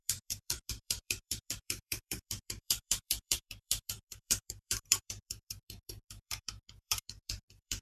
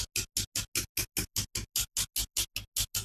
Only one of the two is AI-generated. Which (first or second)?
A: first